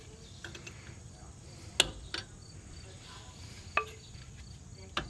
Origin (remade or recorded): recorded